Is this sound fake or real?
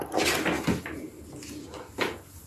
real